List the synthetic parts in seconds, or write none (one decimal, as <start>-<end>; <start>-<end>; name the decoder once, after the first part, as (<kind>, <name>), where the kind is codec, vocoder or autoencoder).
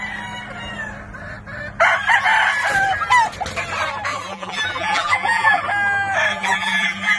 4.1-5.6 (vocoder, BigVGAN v2); 6.3-7.2